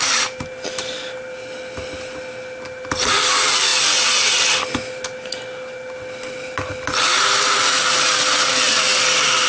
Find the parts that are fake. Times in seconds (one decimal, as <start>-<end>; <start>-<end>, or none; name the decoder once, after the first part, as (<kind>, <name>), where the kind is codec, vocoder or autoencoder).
0.0-9.5 (vocoder, BigVGAN v2)